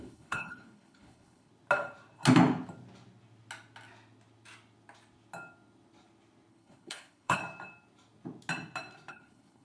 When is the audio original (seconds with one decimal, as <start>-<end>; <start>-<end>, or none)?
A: 1.5-6.5; 7.4-9.1